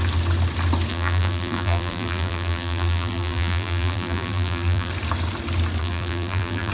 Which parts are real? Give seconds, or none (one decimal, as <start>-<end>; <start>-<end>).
0.0-0.9; 4.9-5.8